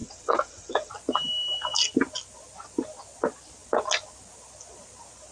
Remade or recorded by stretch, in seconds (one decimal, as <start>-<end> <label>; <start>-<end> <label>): 0.0-0.9 remade; 0.9-5.3 recorded